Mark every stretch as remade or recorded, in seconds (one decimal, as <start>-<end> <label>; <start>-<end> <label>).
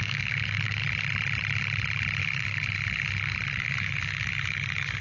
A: 0.0-0.8 remade; 0.8-2.2 recorded; 2.2-5.0 remade